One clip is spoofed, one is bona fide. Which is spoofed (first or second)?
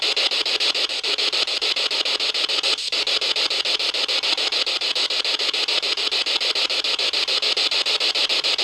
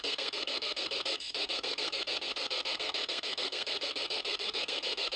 second